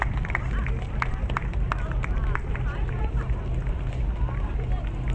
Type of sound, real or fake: real